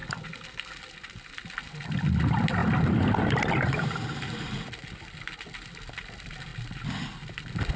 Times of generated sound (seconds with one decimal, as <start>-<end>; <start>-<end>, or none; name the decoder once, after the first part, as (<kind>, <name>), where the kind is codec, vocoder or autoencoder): none